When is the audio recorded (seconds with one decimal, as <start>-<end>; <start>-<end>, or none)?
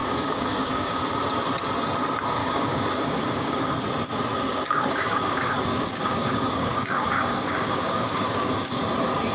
1.0-2.4; 3.6-4.3; 8.8-9.3